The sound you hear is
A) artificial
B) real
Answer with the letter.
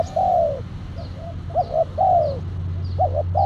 B